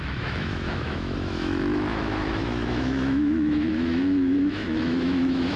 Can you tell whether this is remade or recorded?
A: remade